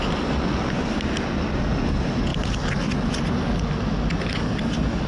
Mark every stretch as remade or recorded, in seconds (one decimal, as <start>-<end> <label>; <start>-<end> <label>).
0.0-5.1 recorded